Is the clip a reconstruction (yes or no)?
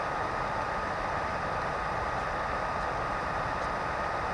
yes